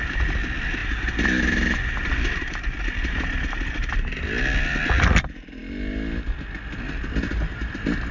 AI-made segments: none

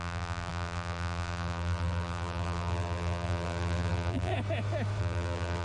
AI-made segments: 0.0-4.3 (vocoder, BigVGAN v2); 5.0-5.6

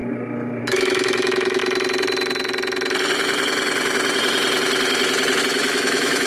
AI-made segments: 0.6-1.6 (autoencoder, DAC-VAE); 5.4-6.3

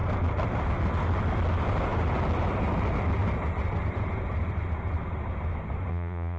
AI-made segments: 5.9-6.4 (vocoder, Vocos)

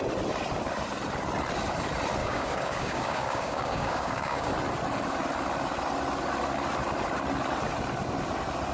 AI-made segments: 2.2-4.5 (codec, DAC)

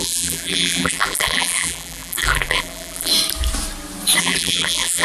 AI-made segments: 0.0-3.1 (vocoder, BigVGAN v2); 4.2-5.0